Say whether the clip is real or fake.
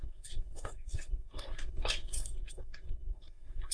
fake